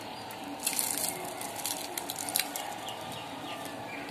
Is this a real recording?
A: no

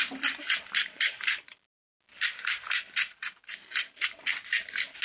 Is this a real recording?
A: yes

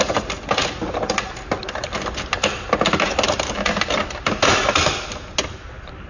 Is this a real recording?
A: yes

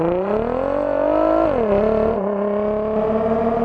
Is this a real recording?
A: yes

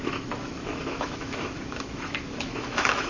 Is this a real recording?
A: no